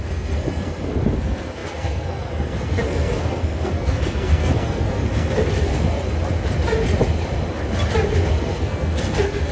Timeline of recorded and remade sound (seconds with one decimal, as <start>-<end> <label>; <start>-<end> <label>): 0.0-5.7 remade; 5.7-8.3 recorded; 8.3-9.5 remade